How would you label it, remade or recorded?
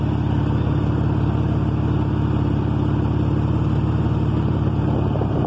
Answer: recorded